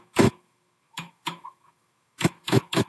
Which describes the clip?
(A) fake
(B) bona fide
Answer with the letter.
A